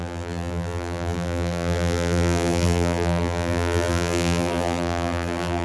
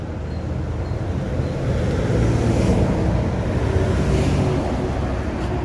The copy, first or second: first